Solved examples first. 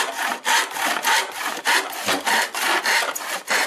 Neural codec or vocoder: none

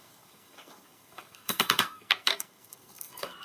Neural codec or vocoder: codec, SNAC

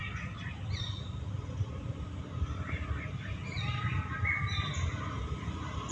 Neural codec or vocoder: none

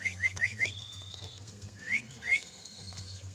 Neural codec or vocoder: codec, SNAC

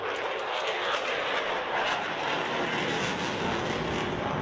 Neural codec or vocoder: none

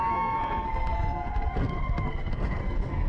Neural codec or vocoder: codec, SNAC